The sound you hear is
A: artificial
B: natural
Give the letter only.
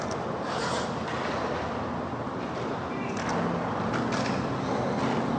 B